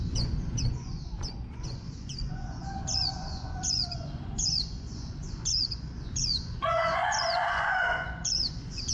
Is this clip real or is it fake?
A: fake